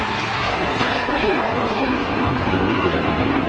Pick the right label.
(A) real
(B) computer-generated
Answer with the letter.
B